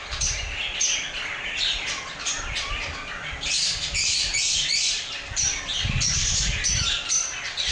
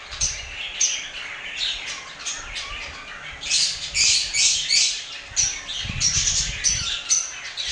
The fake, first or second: first